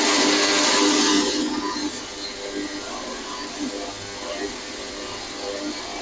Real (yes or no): yes